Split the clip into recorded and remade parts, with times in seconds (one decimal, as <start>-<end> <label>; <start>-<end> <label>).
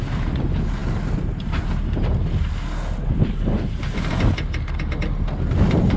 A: 0.0-6.0 recorded